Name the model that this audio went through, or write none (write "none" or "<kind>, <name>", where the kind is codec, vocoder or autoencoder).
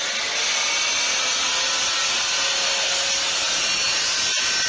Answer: none